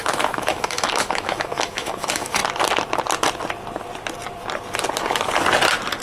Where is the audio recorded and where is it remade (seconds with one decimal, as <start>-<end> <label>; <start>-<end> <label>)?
0.0-2.4 remade; 2.4-6.0 recorded